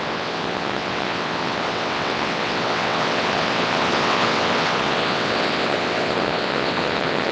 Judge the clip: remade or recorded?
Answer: remade